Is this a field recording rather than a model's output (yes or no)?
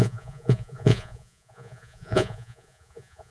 no